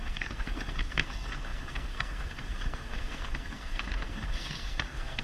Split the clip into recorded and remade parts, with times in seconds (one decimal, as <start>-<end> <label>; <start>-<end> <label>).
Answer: 0.0-5.2 remade